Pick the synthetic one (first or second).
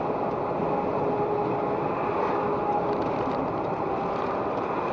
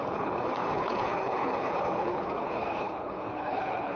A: second